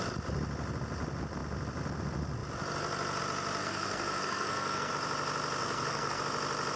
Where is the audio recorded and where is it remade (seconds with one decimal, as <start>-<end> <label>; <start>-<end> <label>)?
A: 0.0-3.6 recorded; 3.6-4.9 remade; 4.9-5.6 recorded; 5.6-6.2 remade; 6.2-6.8 recorded